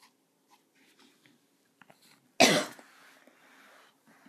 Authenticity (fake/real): real